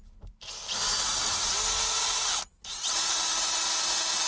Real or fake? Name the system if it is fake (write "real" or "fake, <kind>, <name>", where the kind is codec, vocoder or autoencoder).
real